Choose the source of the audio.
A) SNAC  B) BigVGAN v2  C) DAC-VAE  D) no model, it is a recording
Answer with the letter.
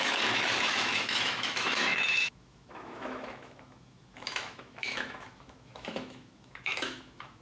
C